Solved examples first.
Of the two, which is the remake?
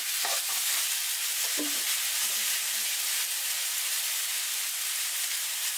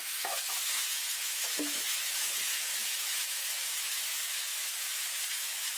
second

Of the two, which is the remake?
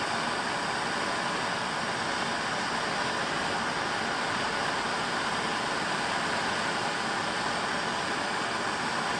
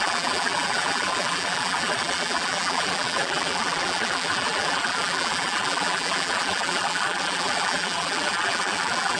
second